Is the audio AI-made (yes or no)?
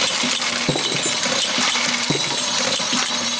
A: no